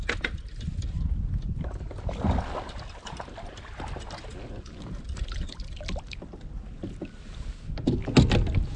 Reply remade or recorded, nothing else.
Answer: recorded